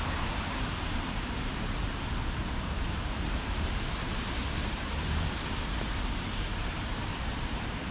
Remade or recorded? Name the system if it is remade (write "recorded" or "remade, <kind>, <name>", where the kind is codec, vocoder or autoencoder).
remade, vocoder, BigVGAN v2